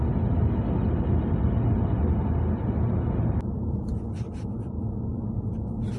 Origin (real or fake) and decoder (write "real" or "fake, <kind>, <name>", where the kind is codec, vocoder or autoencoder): real